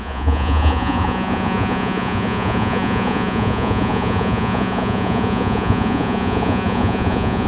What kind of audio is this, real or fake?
fake